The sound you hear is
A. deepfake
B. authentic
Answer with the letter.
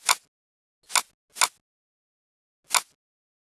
B